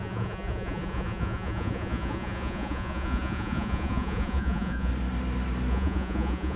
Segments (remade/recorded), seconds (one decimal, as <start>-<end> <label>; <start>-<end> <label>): 0.0-4.9 remade; 4.9-5.7 recorded; 5.7-6.6 remade

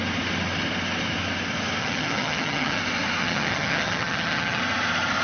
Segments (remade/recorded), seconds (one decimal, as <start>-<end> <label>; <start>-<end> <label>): 0.0-1.8 recorded; 1.8-2.8 remade; 2.8-3.2 recorded; 3.2-4.6 remade; 4.6-5.2 recorded

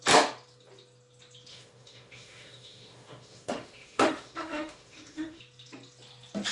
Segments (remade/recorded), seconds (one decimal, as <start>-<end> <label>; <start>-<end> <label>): 0.0-1.5 recorded; 1.5-5.4 remade; 5.4-6.5 recorded

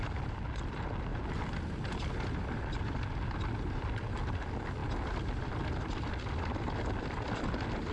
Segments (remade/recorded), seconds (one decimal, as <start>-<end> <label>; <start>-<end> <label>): 0.0-7.9 recorded

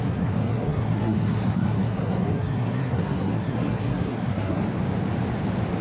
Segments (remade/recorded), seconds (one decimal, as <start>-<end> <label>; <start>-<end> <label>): 0.0-4.6 remade; 4.6-5.8 recorded

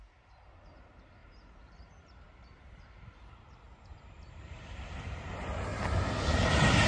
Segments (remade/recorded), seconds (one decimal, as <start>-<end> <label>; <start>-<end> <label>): 0.0-1.2 recorded; 1.2-5.3 remade; 5.3-6.9 recorded

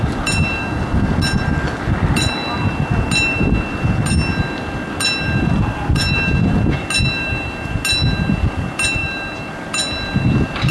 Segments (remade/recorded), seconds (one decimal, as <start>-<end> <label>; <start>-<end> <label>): 0.0-10.7 recorded

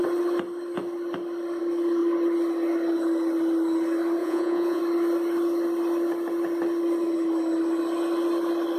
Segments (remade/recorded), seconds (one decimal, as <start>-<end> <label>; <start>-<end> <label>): 0.0-4.2 recorded; 4.2-4.8 remade; 4.8-8.8 recorded